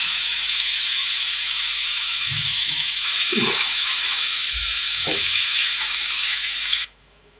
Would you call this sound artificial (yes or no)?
yes